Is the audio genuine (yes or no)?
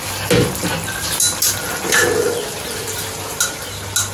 yes